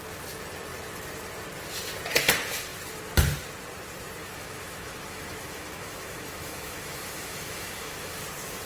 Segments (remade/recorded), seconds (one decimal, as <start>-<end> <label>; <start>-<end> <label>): 0.0-4.2 recorded; 4.2-8.2 remade; 8.2-8.7 recorded